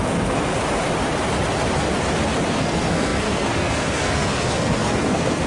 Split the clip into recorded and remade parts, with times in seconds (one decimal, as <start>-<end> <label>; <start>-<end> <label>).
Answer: 0.0-0.5 remade; 0.5-2.5 recorded; 2.5-5.5 remade